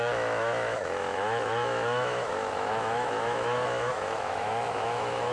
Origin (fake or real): fake